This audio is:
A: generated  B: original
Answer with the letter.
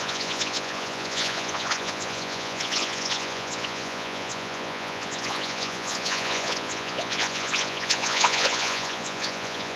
A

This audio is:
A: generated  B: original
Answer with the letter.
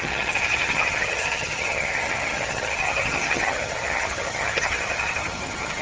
A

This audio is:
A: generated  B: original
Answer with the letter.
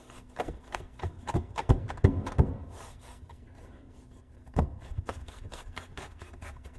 A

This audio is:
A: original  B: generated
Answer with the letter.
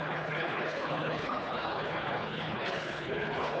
B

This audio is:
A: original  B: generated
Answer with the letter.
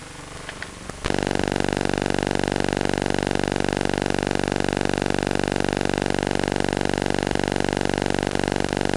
A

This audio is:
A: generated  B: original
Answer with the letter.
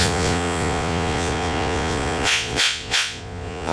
A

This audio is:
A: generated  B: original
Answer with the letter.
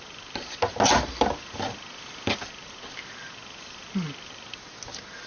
B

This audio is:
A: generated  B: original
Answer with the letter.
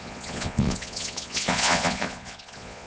A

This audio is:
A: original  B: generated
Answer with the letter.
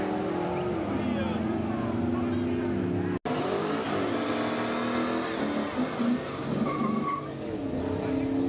A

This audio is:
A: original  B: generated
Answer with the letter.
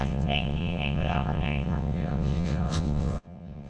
B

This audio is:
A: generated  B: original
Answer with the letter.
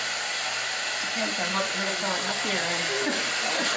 B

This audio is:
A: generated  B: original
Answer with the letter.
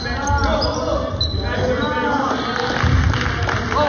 B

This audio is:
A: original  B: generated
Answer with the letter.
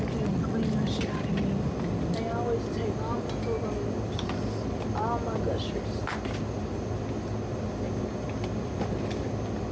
A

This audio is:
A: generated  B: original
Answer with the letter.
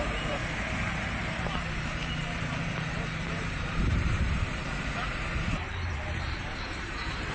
A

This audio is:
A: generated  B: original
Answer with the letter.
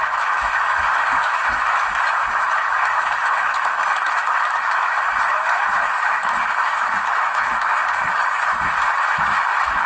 A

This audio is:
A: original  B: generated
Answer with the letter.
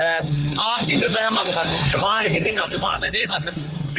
B